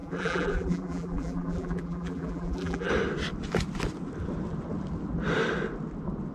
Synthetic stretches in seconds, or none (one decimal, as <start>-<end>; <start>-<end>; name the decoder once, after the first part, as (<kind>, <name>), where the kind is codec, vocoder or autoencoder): 0.0-2.9 (vocoder, BigVGAN v2)